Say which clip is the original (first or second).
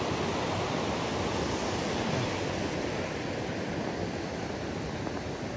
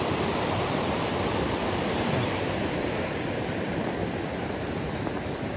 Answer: first